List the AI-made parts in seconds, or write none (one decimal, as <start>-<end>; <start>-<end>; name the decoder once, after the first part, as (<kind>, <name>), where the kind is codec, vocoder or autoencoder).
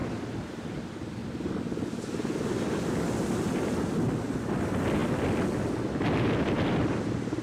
none